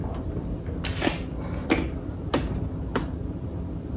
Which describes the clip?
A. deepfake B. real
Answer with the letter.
B